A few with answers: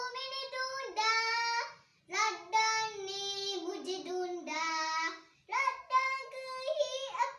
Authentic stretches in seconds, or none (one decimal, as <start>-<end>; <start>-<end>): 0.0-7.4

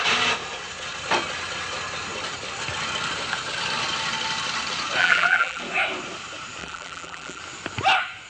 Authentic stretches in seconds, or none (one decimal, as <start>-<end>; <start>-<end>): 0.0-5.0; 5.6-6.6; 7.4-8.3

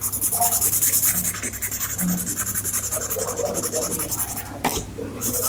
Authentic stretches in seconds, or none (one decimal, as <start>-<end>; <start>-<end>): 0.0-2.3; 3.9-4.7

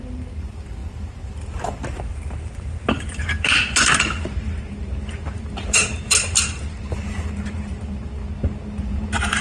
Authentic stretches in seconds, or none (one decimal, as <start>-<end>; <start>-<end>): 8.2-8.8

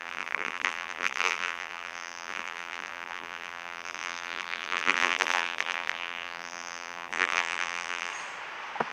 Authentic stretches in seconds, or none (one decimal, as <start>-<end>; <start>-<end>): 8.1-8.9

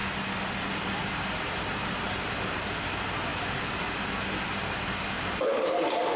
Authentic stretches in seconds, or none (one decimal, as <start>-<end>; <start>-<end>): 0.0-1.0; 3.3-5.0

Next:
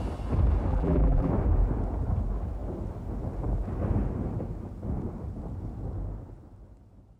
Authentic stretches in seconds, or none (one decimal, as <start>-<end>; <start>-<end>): 0.0-0.7; 1.3-7.2

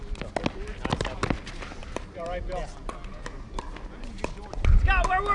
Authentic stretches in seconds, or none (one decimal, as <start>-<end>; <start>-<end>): 0.0-1.8; 2.5-5.3